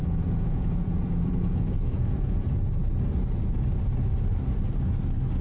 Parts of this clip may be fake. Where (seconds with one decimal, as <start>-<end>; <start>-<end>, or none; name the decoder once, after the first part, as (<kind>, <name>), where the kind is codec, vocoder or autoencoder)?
0.0-2.4 (vocoder, Vocos)